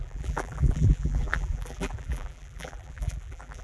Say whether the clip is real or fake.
fake